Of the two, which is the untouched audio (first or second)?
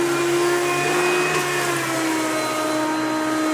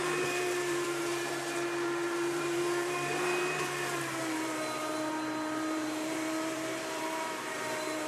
first